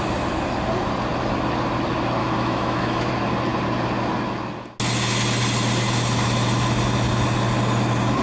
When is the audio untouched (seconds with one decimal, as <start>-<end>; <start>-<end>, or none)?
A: 0.0-2.2; 3.1-8.2